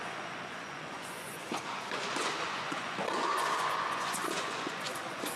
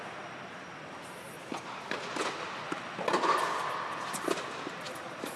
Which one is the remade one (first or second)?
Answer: first